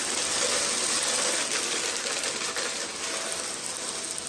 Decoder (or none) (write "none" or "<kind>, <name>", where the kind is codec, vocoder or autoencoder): none